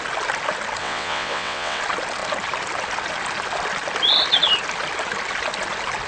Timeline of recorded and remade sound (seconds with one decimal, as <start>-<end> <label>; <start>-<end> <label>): 0.0-0.8 recorded; 0.8-1.8 remade; 1.8-6.1 recorded